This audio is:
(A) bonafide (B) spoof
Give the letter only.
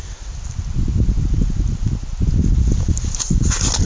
A